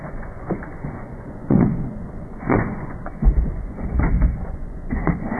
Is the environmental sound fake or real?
fake